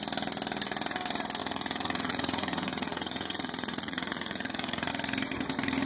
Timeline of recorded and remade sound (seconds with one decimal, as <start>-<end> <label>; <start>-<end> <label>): 0.0-1.4 recorded; 1.4-4.9 remade; 4.9-5.9 recorded